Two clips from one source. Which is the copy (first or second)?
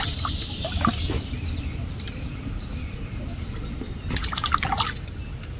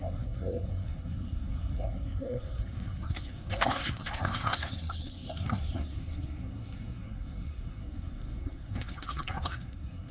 second